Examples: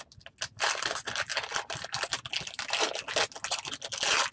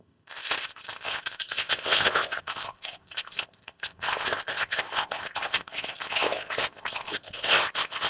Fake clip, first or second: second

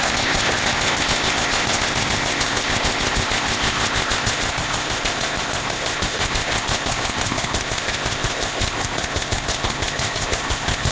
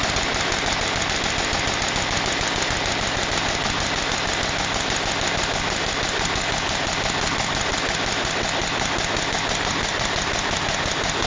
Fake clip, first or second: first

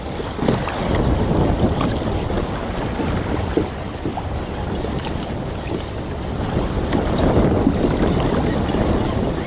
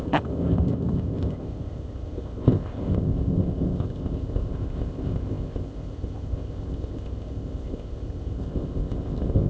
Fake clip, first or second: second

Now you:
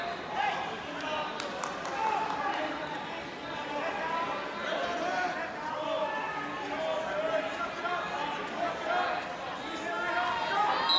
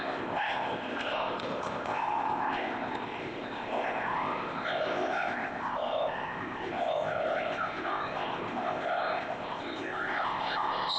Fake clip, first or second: second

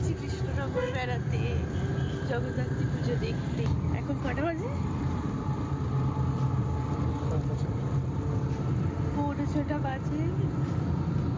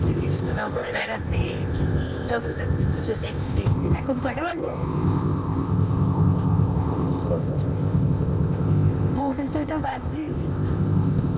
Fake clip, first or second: second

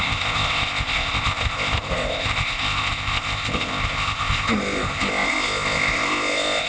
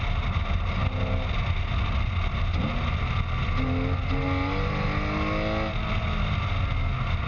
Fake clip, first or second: first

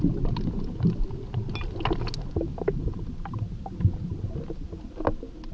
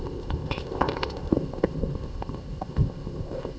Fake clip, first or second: second